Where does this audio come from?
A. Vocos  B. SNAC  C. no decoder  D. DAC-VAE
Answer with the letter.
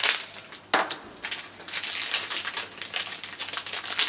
C